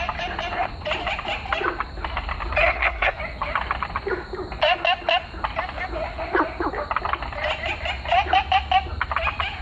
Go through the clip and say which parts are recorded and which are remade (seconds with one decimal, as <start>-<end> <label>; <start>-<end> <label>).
0.0-2.6 recorded; 2.6-3.2 remade; 3.2-9.6 recorded